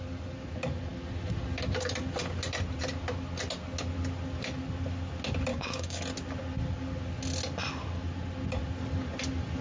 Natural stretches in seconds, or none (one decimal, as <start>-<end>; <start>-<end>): 0.0-5.5; 6.0-9.6